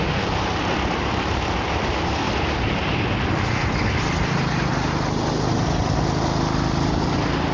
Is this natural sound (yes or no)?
yes